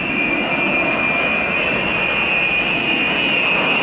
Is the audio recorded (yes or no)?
yes